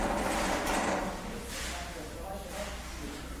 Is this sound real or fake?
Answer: real